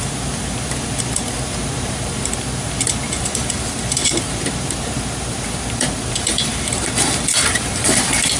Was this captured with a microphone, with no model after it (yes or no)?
no